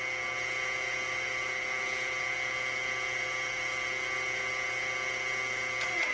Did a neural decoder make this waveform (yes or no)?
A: no